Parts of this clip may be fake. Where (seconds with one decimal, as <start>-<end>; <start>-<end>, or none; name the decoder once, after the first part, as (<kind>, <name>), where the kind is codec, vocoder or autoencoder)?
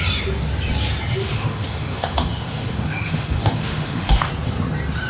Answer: 1.2-4.3 (autoencoder, DAC-VAE)